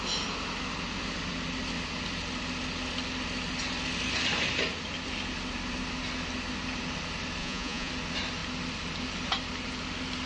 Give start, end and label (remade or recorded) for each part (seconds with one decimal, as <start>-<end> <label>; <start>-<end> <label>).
0.0-7.4 recorded; 7.4-7.9 remade; 7.9-10.3 recorded

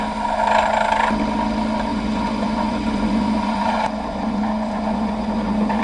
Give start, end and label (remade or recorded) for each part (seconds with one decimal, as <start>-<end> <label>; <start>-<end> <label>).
0.0-1.9 recorded; 1.9-5.8 remade

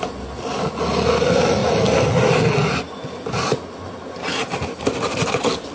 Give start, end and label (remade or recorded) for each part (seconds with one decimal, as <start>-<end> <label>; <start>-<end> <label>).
0.0-5.7 recorded

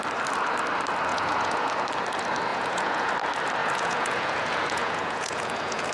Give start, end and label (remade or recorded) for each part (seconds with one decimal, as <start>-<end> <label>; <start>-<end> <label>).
0.0-1.1 recorded; 1.1-1.7 remade; 1.7-2.5 recorded; 2.5-3.1 remade; 3.1-3.6 recorded; 3.6-5.9 remade

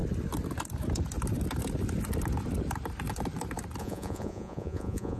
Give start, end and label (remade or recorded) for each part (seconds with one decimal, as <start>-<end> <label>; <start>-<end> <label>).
0.0-3.8 recorded; 3.8-5.2 remade